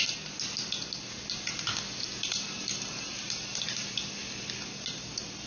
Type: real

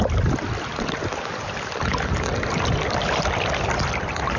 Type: real